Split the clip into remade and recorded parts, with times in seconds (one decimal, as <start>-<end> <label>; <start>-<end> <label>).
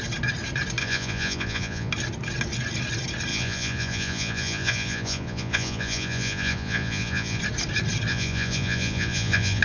0.0-0.8 recorded; 0.8-1.9 remade; 1.9-3.3 recorded; 3.3-7.4 remade; 7.4-8.1 recorded; 8.1-9.6 remade